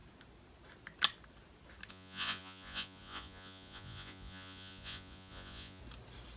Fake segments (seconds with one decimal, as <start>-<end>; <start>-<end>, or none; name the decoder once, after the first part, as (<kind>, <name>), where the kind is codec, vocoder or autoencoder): 1.9-5.8 (vocoder, Vocos)